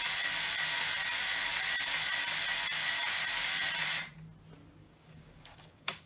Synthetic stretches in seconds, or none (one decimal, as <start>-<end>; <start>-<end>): 4.8-6.1